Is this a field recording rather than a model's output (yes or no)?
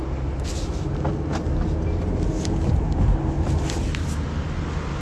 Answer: yes